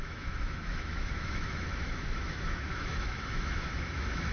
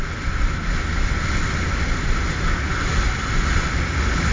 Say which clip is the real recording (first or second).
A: second